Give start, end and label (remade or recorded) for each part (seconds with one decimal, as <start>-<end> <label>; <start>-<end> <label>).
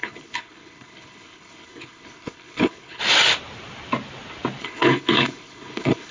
0.0-3.0 remade; 3.0-4.6 recorded; 4.6-6.1 remade